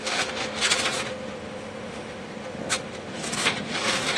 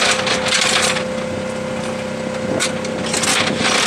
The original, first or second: second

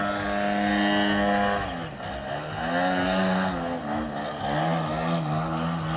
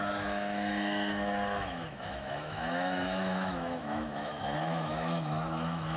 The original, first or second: first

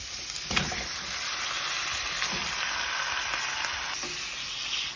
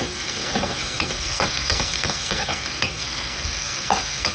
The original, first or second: first